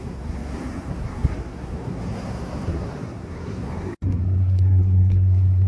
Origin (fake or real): fake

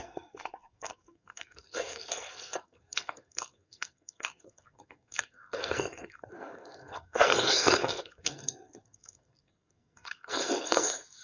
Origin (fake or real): fake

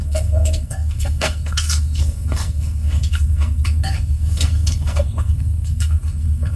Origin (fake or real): fake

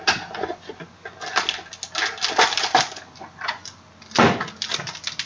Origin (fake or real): real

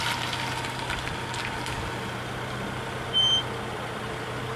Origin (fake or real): real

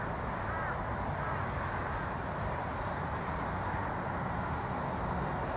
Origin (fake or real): real